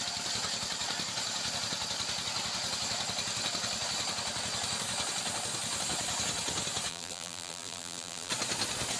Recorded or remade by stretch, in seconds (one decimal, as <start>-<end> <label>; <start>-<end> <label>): 0.0-6.9 recorded; 6.9-8.3 remade; 8.3-9.0 recorded